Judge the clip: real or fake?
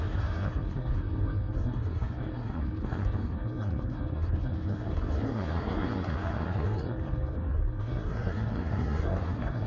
fake